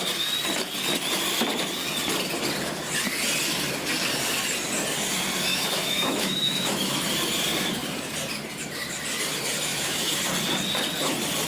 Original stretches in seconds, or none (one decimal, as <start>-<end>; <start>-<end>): 0.0-5.5; 7.0-9.7; 10.2-11.5

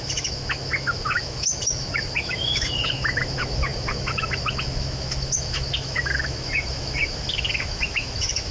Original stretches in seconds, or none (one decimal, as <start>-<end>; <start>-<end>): none